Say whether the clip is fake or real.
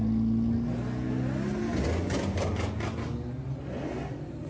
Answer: real